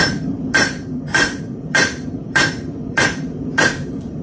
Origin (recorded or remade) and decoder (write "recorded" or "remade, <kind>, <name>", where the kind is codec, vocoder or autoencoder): remade, vocoder, BigVGAN v2